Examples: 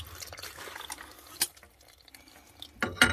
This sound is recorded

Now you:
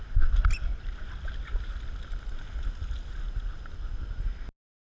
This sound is recorded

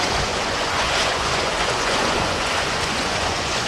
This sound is remade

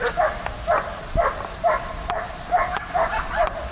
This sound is recorded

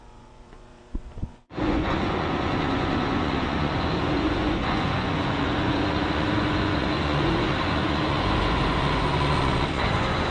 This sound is remade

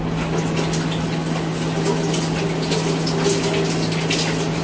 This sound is recorded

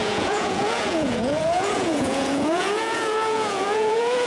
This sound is remade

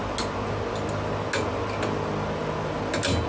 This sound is recorded